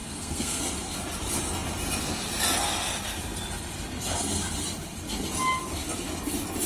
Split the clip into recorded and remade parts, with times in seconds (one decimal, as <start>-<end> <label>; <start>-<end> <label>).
0.0-0.6 remade; 0.6-6.7 recorded